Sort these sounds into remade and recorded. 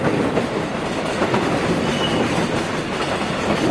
recorded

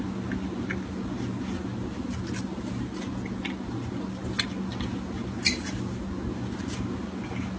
recorded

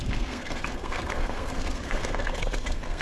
remade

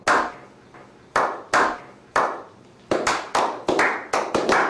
recorded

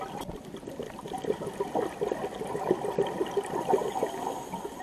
recorded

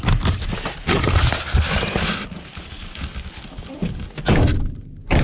recorded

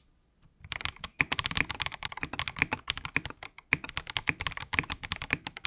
recorded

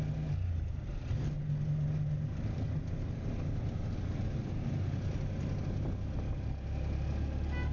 recorded